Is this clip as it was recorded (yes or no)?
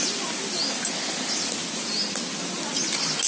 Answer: yes